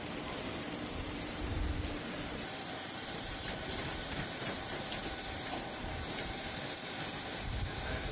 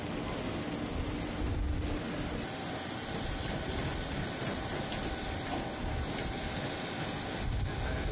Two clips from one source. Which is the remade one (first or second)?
first